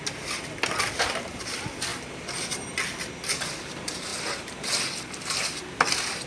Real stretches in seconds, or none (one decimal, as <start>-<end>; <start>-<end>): 0.0-6.3